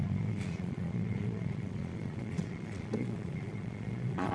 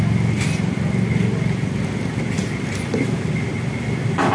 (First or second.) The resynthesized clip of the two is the first